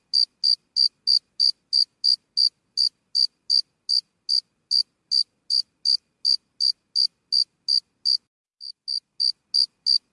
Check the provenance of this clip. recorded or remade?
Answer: recorded